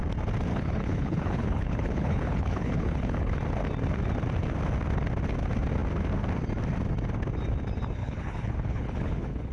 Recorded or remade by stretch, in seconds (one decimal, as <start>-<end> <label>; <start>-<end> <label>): 0.0-0.5 recorded; 0.5-3.3 remade; 3.3-8.0 recorded; 8.0-9.5 remade